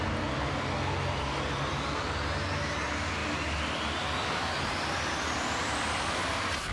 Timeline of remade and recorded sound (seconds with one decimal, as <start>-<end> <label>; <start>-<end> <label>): 0.0-6.7 recorded